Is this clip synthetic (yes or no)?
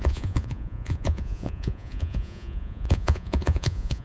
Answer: yes